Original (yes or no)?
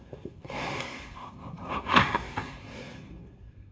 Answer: no